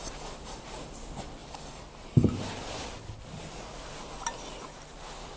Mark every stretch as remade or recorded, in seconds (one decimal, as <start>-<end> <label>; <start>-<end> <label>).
0.0-5.4 recorded